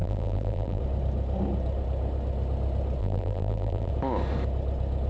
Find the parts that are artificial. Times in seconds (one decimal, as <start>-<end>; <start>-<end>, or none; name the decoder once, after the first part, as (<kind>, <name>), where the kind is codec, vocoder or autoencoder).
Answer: 0.0-0.8 (vocoder, BigVGAN v2); 3.0-3.9